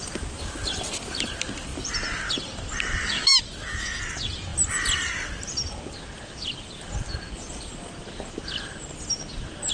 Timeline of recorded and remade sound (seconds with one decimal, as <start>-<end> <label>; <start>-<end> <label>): 0.0-3.0 recorded; 3.0-4.0 remade; 4.0-9.7 recorded